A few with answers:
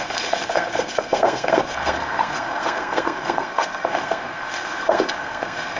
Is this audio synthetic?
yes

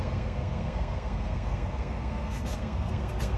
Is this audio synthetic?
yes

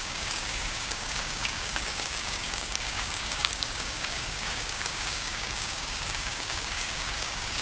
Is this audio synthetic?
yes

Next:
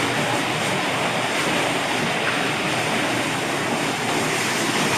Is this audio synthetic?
no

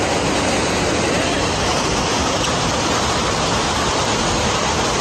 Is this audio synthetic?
no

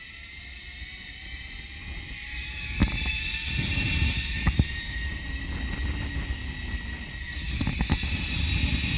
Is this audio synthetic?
no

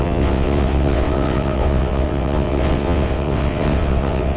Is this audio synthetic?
yes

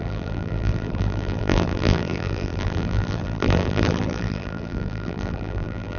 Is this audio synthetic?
yes